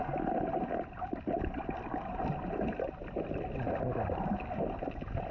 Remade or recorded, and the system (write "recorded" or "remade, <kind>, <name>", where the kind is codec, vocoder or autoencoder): recorded